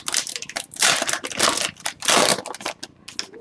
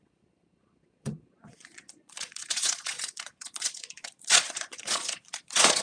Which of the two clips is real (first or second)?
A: first